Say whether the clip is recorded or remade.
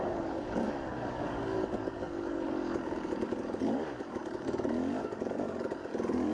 remade